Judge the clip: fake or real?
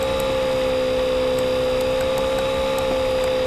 real